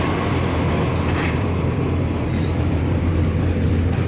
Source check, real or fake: fake